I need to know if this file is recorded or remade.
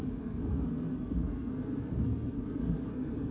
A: remade